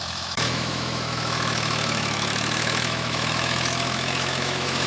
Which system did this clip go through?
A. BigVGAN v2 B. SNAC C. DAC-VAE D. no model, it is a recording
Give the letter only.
C